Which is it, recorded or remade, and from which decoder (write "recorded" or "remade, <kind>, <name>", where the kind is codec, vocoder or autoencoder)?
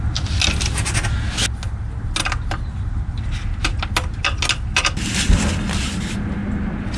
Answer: recorded